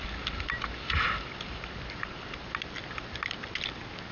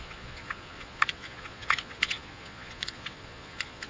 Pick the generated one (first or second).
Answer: second